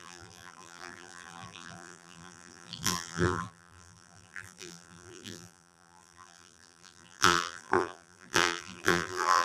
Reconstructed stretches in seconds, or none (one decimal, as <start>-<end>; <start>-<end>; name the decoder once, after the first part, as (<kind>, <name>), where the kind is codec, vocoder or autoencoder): 0.0-9.4 (vocoder, BigVGAN v2)

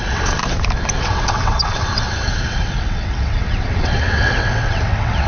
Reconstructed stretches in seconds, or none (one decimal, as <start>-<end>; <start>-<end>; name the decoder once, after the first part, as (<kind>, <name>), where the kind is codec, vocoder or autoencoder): 0.0-0.4 (vocoder, WaveNeXt); 1.0-5.3

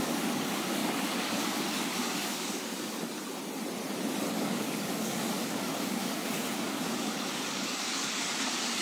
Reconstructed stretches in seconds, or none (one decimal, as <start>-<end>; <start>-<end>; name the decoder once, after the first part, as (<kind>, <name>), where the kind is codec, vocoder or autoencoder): 0.0-3.1 (codec, DAC); 4.3-8.8

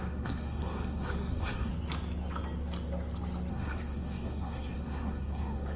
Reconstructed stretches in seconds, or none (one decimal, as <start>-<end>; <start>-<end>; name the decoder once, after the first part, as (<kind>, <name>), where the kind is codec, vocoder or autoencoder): 0.0-1.7 (codec, SNAC); 3.5-5.8